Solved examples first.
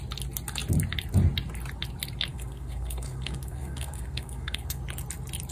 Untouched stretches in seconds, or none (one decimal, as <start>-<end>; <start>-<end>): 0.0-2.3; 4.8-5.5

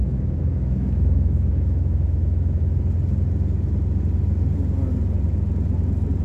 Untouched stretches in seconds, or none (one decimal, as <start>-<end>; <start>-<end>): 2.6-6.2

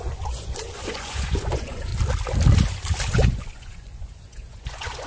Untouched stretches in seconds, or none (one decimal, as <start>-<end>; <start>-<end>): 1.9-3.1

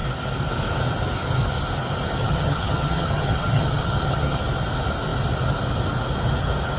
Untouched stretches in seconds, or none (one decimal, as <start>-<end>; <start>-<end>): 0.0-2.2; 4.4-6.8

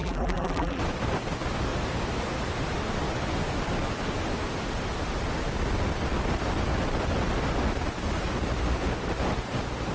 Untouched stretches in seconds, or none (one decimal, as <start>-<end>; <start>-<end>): 0.8-9.9

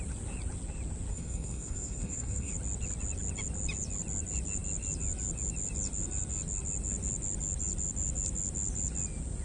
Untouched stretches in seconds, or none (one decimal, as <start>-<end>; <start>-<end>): 0.0-1.1; 2.5-9.4

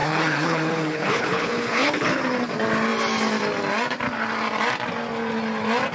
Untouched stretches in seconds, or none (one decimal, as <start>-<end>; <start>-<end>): 2.2-5.9